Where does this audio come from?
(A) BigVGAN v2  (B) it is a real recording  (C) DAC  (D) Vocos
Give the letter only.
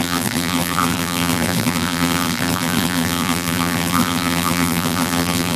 A